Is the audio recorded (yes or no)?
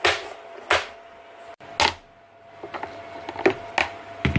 yes